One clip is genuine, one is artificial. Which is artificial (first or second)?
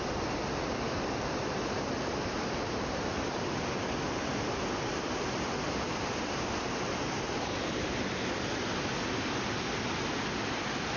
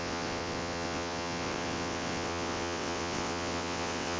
second